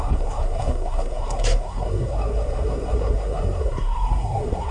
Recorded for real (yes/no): no